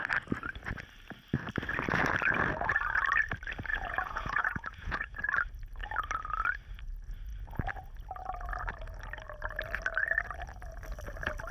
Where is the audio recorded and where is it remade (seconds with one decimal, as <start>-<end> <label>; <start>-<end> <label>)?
0.0-3.7 recorded; 3.7-5.2 remade; 5.2-11.5 recorded